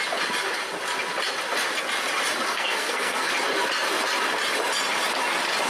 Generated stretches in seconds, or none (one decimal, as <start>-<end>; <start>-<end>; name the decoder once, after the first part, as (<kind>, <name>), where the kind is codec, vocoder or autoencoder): 2.5-3.3 (codec, SNAC)